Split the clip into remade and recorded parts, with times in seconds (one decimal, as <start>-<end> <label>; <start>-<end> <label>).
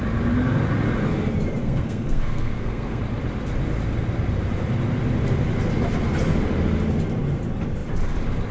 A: 0.0-1.6 recorded; 1.6-3.0 remade; 3.0-8.5 recorded